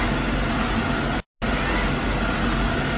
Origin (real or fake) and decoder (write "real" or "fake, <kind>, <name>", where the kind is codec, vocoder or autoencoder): real